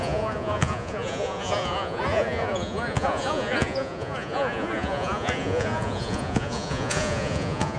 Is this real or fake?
fake